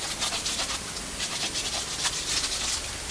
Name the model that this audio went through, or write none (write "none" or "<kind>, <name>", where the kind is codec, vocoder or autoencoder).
none